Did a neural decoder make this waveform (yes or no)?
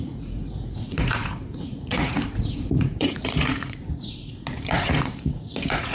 yes